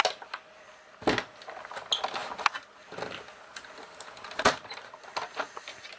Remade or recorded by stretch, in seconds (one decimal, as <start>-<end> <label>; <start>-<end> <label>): 0.0-6.0 recorded